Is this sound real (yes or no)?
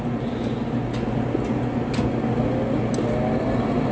yes